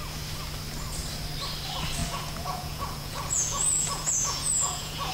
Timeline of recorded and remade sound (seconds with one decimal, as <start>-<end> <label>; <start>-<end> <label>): 0.0-2.0 recorded; 2.0-5.1 remade